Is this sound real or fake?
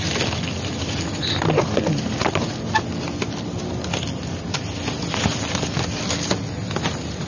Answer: real